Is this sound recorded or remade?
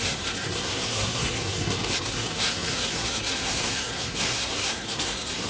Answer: remade